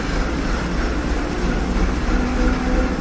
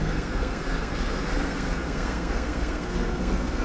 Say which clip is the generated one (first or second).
second